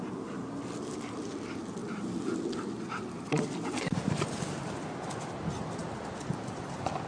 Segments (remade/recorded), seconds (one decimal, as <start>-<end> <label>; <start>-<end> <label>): 0.0-7.1 recorded

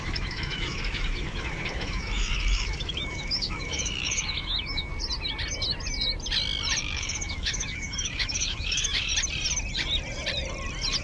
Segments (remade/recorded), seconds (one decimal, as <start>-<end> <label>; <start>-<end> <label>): 0.0-4.9 remade; 4.9-6.8 recorded; 6.8-9.1 remade; 9.1-11.0 recorded